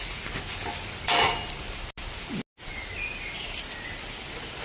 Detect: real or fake real